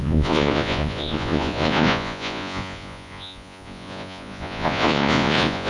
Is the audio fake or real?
fake